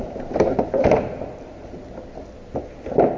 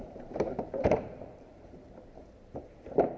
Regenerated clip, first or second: second